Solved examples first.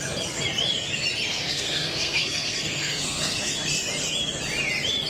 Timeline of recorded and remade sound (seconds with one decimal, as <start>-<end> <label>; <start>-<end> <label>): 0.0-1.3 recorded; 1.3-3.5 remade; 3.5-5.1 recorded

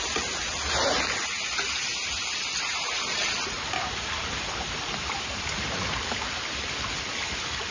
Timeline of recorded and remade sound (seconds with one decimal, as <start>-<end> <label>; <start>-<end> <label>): 0.0-7.7 recorded

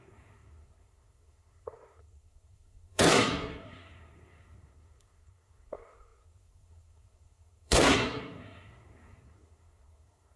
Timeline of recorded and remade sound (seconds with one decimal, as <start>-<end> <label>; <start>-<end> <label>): 0.0-10.4 remade